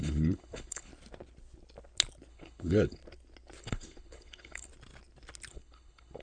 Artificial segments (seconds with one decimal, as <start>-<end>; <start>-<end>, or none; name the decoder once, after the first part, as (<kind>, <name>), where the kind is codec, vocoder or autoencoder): 0.0-0.9 (codec, HILCodec); 2.3-3.0; 3.6-4.7; 5.5-6.2